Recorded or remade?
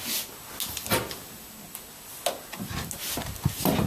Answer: recorded